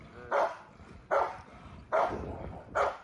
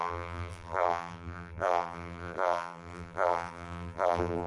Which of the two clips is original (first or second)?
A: first